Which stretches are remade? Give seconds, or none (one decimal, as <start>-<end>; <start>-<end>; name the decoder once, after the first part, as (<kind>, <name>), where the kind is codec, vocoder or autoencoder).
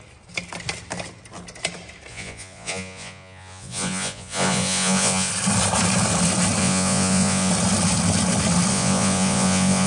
2.1-5.3 (vocoder, Vocos); 6.6-7.5; 8.7-9.9